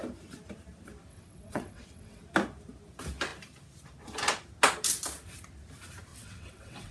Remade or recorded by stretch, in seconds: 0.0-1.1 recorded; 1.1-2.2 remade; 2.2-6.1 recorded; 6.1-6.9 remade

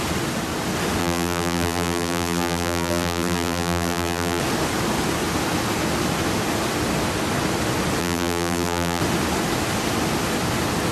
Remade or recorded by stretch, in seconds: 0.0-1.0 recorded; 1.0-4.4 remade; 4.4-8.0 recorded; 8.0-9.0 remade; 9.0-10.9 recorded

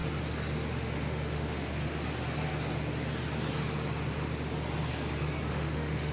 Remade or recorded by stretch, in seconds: 0.0-0.7 recorded; 0.7-1.8 remade; 1.8-5.5 recorded; 5.5-6.1 remade

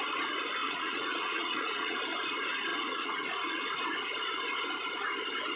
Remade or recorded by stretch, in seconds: 0.0-0.6 recorded; 0.6-2.0 remade; 2.0-2.7 recorded; 2.7-3.6 remade; 3.6-5.6 recorded

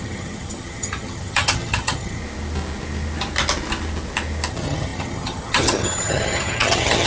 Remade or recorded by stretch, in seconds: 0.0-2.2 remade; 2.2-4.5 recorded; 4.5-7.1 remade